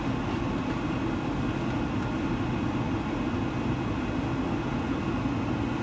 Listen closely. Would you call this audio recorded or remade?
recorded